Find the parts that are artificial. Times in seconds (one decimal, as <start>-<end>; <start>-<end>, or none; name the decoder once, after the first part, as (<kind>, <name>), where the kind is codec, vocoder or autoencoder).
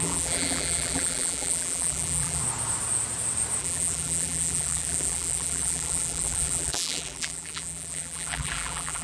0.0-2.4 (vocoder, BigVGAN v2); 3.6-9.0